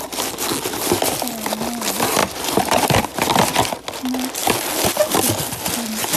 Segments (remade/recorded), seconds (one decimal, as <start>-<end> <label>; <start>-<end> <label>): 0.0-2.2 recorded; 2.2-3.7 remade; 3.7-6.2 recorded